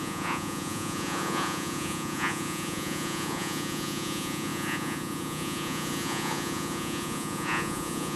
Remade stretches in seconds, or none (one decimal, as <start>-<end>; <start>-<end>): 0.0-8.2